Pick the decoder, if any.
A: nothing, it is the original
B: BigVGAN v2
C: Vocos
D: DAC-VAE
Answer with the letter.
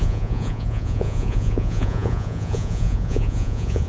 C